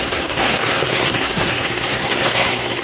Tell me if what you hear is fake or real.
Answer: fake